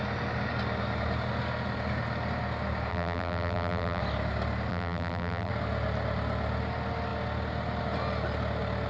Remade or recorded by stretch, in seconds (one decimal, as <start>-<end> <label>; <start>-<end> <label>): 0.0-2.9 recorded; 2.9-4.0 remade; 4.0-4.7 recorded; 4.7-5.5 remade; 5.5-8.9 recorded